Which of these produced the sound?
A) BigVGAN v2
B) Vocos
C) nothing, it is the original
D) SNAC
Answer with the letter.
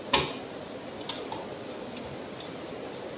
C